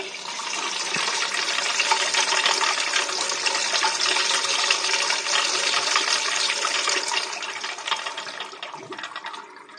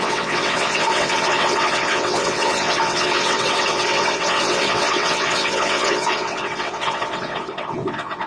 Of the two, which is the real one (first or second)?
first